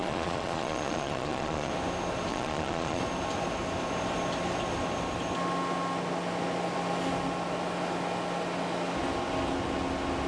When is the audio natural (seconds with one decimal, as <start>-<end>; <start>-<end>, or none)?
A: 1.7-2.3; 3.0-10.3